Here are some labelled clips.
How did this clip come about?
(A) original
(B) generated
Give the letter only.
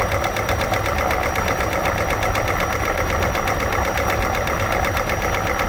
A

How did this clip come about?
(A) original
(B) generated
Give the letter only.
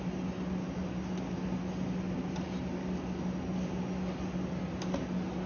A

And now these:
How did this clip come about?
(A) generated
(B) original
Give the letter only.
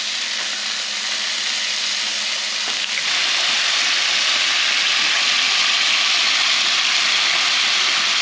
B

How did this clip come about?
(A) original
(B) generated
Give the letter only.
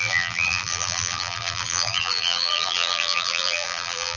B